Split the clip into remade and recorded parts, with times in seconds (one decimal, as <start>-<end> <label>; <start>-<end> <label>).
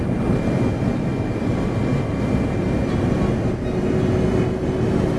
0.0-5.2 recorded